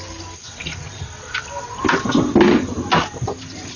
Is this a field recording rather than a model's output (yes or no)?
yes